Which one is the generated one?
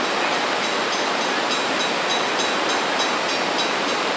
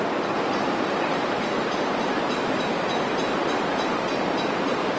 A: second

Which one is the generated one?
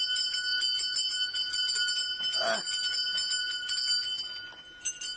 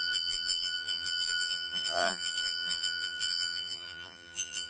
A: second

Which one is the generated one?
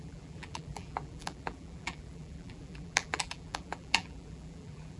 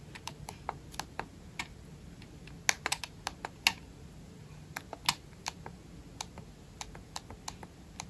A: first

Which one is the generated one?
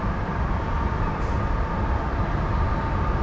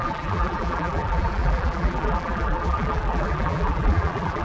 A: second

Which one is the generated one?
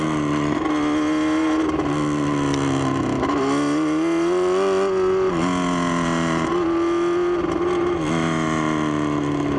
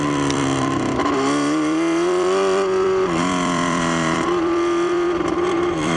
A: second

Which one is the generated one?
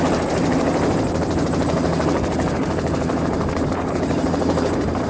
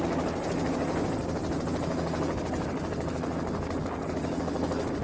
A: first